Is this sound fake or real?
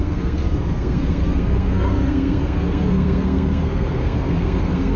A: fake